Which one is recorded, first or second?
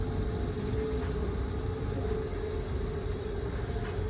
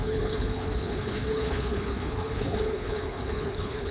first